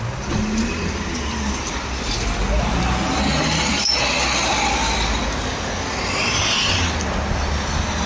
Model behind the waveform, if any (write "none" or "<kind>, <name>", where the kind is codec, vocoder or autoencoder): none